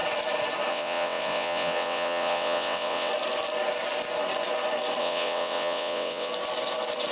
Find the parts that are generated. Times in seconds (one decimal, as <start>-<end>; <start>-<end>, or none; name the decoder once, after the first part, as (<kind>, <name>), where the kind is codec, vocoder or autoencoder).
0.7-3.1 (vocoder, WaveNeXt); 5.0-6.3